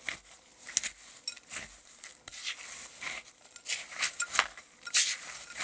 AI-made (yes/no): no